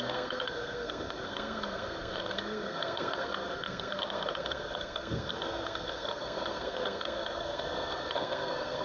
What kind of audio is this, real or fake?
fake